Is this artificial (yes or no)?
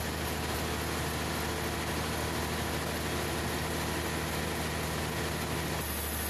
no